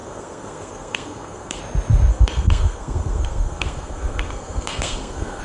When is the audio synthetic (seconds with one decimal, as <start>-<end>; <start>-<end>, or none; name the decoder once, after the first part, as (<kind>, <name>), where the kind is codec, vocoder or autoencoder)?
0.0-1.6 (codec, SNAC); 2.1-5.4